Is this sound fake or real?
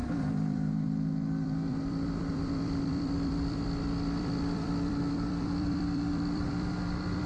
fake